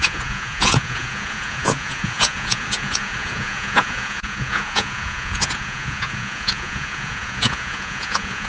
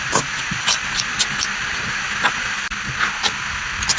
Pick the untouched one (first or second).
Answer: second